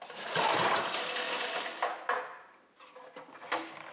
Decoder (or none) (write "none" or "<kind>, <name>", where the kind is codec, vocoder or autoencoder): none